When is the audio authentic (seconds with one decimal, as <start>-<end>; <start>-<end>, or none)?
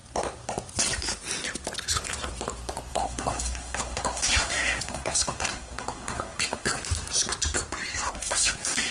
0.0-2.9; 6.8-7.9